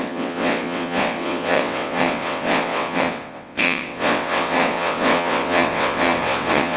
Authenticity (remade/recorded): remade